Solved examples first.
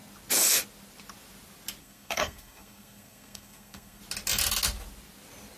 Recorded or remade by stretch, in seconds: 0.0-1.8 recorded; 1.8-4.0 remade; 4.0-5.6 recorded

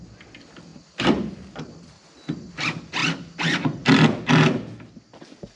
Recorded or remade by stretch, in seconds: 0.0-5.6 recorded

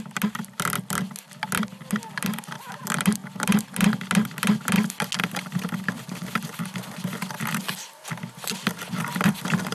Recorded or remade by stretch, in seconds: 0.0-9.7 recorded